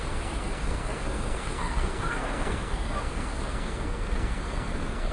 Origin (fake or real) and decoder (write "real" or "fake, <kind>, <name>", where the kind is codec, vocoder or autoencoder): fake, codec, SNAC